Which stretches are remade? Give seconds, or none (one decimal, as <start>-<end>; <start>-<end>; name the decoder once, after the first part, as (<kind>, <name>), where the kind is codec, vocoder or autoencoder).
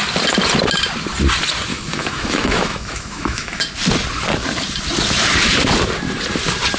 1.7-3.6 (autoencoder, DAC-VAE)